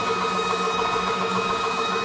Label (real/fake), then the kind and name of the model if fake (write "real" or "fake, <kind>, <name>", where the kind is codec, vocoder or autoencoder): fake, codec, DAC